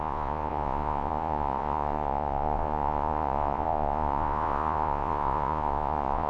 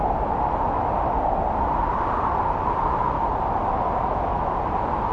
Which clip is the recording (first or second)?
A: second